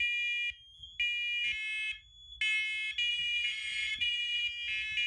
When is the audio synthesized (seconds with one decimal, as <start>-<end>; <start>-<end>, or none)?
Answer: 3.1-4.4